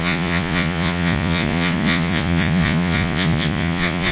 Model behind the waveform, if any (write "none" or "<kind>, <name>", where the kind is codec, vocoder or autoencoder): vocoder, Vocos